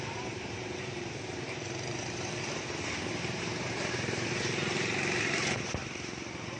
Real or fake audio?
fake